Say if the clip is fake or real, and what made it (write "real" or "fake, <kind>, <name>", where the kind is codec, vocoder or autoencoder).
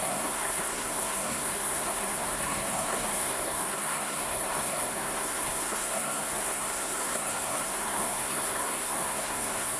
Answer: fake, codec, SNAC